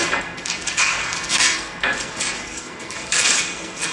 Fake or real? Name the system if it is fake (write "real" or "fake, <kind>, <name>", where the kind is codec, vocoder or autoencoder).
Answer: fake, codec, SNAC